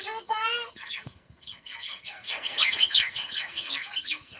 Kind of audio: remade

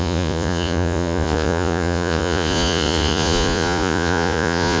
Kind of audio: remade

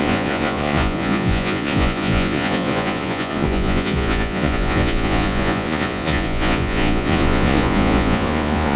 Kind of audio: remade